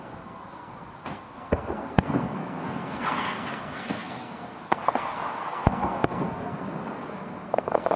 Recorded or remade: remade